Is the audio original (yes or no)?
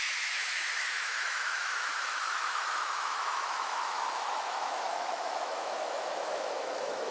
no